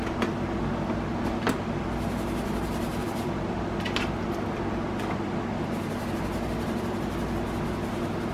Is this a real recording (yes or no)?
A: yes